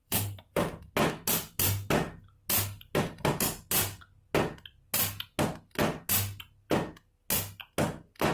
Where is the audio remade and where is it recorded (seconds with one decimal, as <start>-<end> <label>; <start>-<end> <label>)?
0.0-0.8 remade; 0.8-8.3 recorded